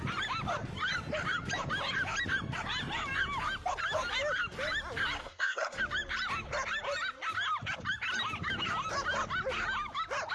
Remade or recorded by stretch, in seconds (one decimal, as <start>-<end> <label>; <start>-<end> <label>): 0.0-5.2 recorded; 5.2-5.8 remade; 5.8-10.3 recorded